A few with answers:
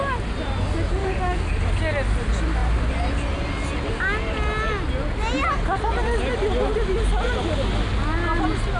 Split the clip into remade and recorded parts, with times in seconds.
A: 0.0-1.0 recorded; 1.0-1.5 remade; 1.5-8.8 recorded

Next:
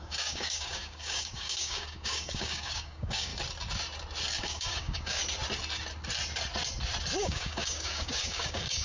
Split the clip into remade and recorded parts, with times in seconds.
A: 0.0-3.3 remade; 3.3-4.4 recorded; 4.4-5.2 remade; 5.2-7.2 recorded; 7.2-8.8 remade

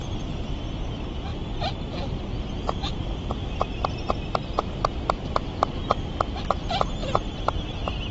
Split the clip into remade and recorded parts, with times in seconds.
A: 0.0-8.1 recorded

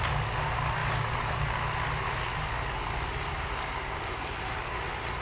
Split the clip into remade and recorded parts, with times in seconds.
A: 0.0-5.2 recorded

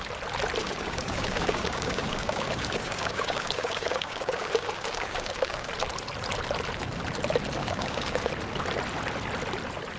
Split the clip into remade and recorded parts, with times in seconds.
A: 0.0-0.6 recorded; 0.6-5.7 remade; 5.7-7.6 recorded; 7.6-8.3 remade; 8.3-10.0 recorded

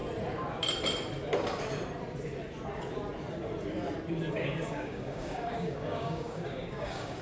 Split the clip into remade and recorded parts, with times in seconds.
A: 0.0-4.3 recorded; 4.3-7.2 remade

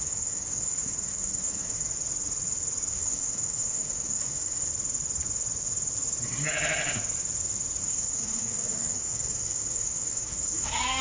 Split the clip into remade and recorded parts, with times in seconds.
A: 0.0-1.8 remade; 1.8-2.9 recorded; 2.9-4.7 remade; 4.7-7.8 recorded; 7.8-11.0 remade

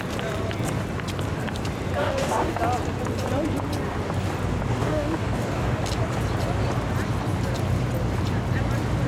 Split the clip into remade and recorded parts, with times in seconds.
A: 0.0-2.0 recorded; 2.0-2.6 remade; 2.6-4.8 recorded; 4.8-5.8 remade; 5.8-9.1 recorded